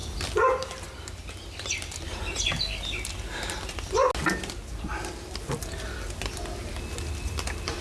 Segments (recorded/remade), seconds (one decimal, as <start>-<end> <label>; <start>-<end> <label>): 0.0-7.8 recorded